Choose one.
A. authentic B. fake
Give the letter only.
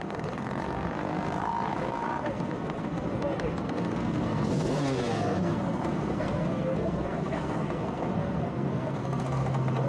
B